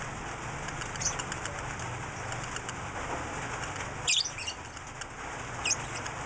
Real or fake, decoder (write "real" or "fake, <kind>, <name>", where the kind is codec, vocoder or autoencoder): real